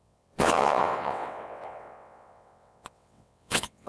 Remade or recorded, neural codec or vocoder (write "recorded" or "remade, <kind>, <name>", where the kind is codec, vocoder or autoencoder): remade, vocoder, WaveNeXt